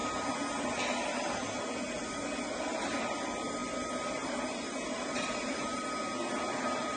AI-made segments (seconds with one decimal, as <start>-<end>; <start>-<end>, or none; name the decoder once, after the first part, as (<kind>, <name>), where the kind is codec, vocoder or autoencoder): 3.6-5.9 (vocoder, BigVGAN v2)